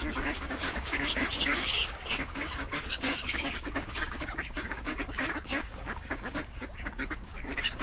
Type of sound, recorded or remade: remade